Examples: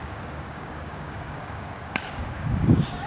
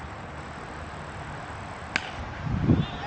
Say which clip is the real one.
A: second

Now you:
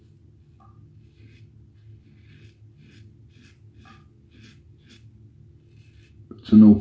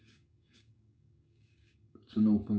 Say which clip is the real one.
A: first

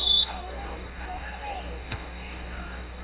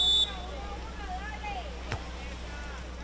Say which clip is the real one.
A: second